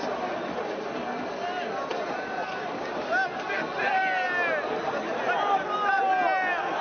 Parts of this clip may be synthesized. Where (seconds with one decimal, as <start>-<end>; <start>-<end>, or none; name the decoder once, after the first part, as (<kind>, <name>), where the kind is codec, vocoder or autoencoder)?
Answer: none